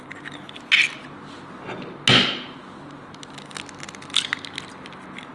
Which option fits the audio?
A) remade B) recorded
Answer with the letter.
B